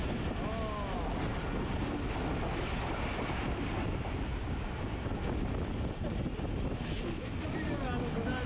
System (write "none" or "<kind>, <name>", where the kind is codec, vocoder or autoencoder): none